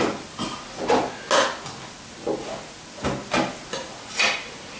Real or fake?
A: real